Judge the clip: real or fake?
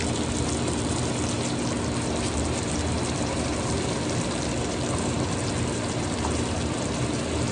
fake